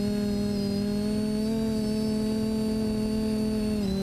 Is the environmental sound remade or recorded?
recorded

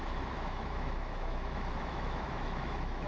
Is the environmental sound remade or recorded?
remade